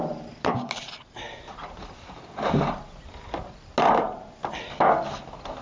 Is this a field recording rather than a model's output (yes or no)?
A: yes